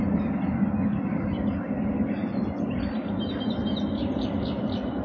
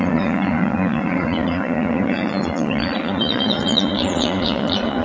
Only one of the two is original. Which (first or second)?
first